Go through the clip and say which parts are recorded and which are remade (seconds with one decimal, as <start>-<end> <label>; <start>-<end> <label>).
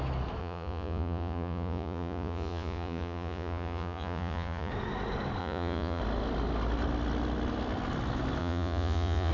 0.0-0.4 recorded; 0.4-4.7 remade; 4.7-5.4 recorded; 5.4-6.0 remade; 6.0-8.4 recorded; 8.4-9.3 remade